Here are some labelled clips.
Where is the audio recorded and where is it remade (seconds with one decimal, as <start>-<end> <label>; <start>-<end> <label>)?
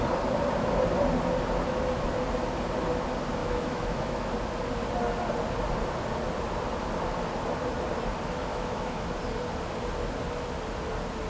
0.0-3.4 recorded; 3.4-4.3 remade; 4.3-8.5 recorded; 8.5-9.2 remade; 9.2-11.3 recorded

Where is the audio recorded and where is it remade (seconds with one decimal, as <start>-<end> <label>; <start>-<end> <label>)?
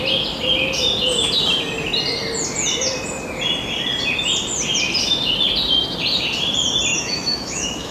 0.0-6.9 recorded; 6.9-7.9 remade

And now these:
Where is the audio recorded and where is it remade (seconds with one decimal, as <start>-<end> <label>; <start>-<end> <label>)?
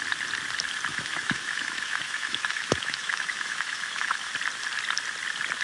0.0-0.9 recorded; 0.9-4.3 remade; 4.3-5.6 recorded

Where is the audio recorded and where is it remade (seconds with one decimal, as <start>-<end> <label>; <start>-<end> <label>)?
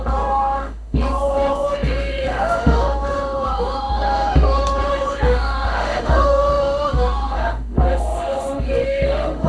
0.0-9.5 remade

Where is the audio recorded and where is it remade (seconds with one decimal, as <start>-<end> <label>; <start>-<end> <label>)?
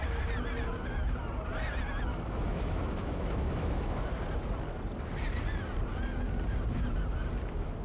0.0-2.1 recorded; 2.1-4.1 remade; 4.1-7.8 recorded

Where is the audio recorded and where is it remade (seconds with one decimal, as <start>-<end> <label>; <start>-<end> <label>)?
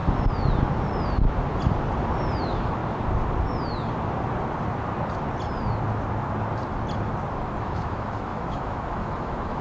0.0-2.4 recorded; 2.4-2.8 remade; 2.8-7.6 recorded; 7.6-9.6 remade